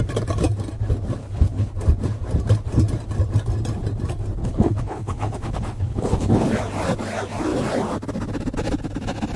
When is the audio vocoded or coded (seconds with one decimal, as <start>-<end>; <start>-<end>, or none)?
1.2-1.7; 4.4-6.5